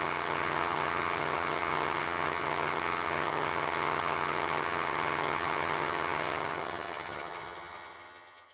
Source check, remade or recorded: remade